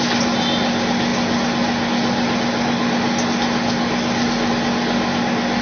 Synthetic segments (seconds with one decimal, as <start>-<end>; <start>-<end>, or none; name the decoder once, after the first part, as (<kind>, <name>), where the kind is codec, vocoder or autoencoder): none